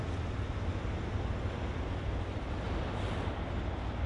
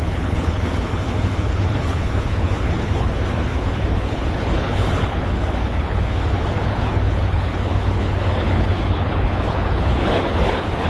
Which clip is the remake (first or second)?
second